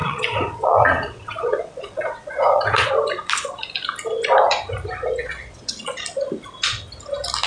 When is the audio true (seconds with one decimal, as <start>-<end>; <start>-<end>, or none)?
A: 2.9-5.2; 5.7-7.5